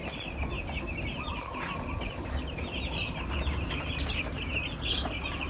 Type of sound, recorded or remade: remade